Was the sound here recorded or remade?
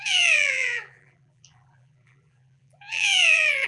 remade